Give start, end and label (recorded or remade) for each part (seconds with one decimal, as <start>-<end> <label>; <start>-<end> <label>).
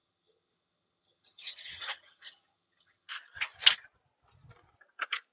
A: 0.0-3.1 remade; 3.1-5.3 recorded